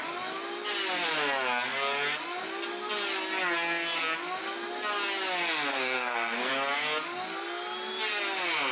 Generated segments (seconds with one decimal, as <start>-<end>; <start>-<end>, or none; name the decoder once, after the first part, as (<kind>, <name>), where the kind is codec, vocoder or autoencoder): 5.7-6.5 (codec, SNAC)